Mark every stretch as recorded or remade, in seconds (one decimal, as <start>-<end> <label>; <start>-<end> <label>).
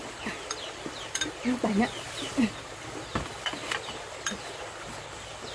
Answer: 0.0-5.5 remade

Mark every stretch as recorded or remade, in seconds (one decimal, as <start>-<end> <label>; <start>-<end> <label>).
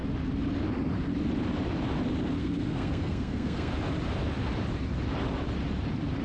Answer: 0.0-2.4 recorded; 2.4-3.7 remade; 3.7-6.2 recorded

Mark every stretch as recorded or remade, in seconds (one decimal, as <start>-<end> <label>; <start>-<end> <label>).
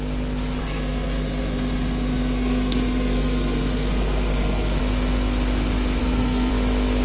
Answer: 0.0-0.6 recorded; 0.6-4.8 remade; 4.8-6.0 recorded; 6.0-6.5 remade; 6.5-7.0 recorded